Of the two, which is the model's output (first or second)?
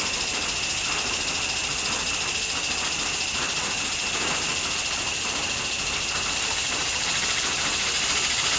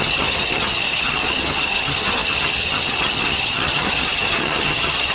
second